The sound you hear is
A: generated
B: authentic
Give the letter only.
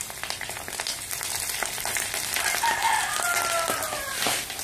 B